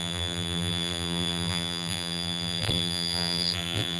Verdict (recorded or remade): remade